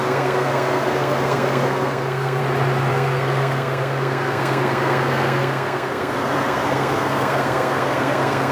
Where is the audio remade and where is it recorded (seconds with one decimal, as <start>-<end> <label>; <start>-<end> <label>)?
0.0-2.4 remade; 2.4-2.9 recorded; 2.9-8.5 remade